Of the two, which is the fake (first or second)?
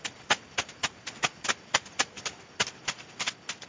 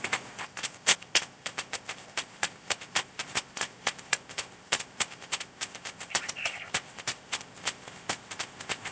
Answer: second